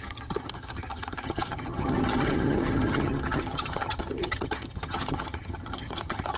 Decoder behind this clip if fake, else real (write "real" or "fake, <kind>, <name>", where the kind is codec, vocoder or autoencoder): fake, vocoder, HiFi-GAN